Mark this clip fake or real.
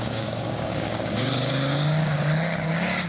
fake